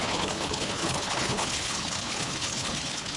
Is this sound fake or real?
fake